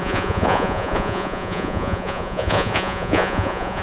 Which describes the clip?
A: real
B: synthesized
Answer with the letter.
B